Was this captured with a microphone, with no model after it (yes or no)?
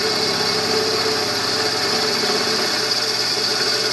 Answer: yes